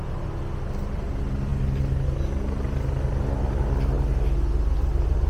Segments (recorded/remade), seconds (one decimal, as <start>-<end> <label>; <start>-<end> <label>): 0.0-5.3 recorded